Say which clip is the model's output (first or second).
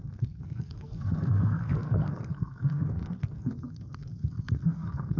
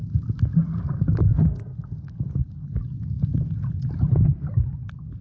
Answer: first